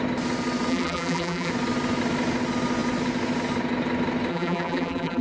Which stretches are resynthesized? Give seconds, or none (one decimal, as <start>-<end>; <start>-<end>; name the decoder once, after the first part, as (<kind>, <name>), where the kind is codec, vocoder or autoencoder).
0.7-1.5 (vocoder, BigVGAN v2); 4.3-5.2